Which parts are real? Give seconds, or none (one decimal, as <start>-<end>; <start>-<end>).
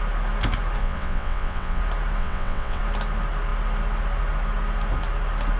0.0-0.8; 1.8-2.2; 2.8-5.6